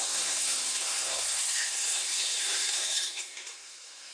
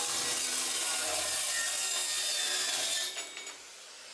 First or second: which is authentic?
second